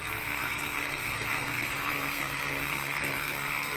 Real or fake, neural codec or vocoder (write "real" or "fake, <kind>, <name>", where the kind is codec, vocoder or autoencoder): fake, codec, SNAC